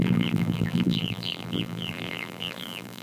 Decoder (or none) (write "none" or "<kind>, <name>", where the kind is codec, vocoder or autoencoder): vocoder, BigVGAN v2